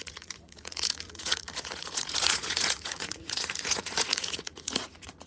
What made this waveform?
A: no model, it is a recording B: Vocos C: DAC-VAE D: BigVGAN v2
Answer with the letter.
B